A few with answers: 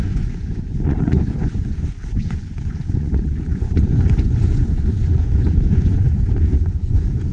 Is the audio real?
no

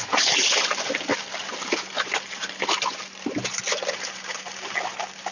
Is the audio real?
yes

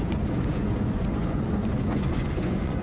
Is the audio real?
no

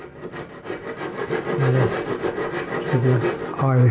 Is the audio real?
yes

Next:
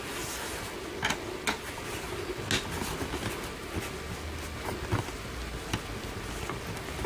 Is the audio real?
yes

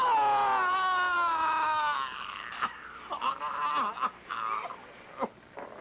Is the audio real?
yes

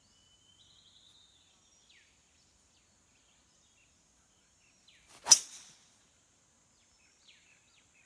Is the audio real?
yes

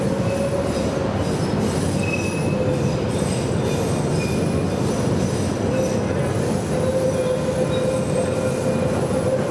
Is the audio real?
yes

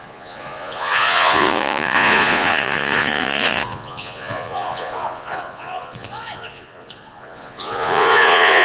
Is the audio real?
no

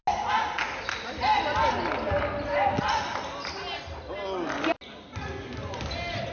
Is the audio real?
yes